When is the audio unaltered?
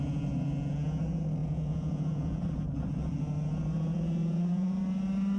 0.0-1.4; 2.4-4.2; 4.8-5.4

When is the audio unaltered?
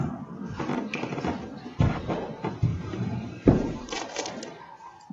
0.0-2.7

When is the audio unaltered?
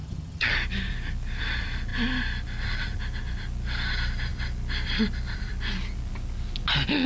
0.5-7.1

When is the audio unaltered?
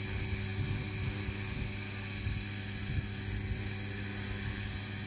0.0-5.1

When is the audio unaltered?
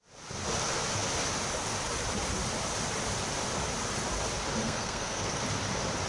0.0-4.6; 5.4-6.1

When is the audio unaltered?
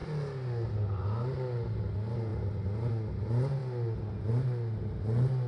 0.0-5.5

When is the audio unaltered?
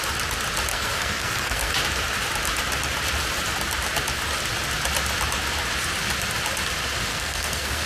0.0-0.7; 1.7-7.1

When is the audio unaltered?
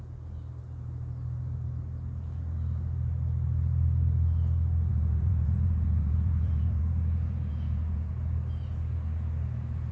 0.0-4.9; 6.8-7.5; 8.1-9.9